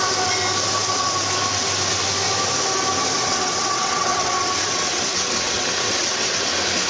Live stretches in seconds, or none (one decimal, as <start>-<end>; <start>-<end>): 0.0-3.2; 6.5-6.9